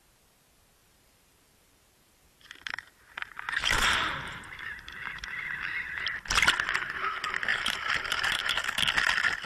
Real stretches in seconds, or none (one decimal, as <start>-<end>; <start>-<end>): 0.0-0.8; 6.0-7.5; 8.8-9.5